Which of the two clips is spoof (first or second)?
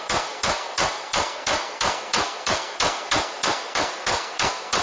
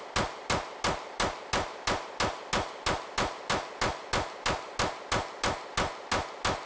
first